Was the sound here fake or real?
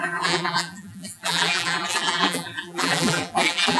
fake